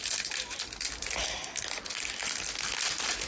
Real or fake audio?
real